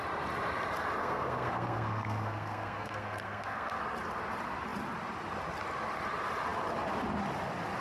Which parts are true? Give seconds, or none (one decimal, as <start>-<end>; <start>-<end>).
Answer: 0.0-1.0; 3.8-7.8